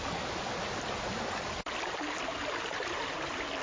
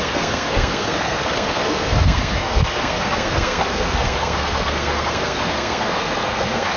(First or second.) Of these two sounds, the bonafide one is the first